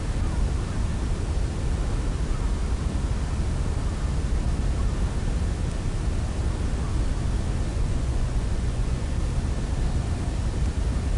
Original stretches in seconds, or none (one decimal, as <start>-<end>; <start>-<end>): 0.0-7.7; 9.2-11.2